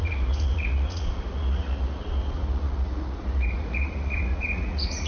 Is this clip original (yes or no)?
no